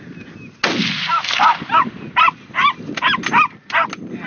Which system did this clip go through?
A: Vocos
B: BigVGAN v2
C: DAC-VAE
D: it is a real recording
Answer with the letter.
D